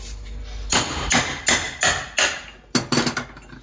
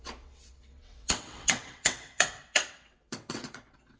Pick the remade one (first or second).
second